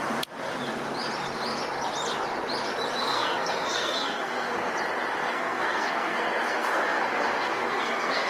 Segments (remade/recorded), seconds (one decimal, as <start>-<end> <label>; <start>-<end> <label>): 0.0-3.0 recorded; 3.0-4.7 remade; 4.7-5.2 recorded; 5.2-8.3 remade